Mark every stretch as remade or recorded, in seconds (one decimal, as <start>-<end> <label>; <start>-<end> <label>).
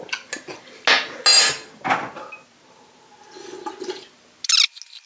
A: 0.0-5.1 recorded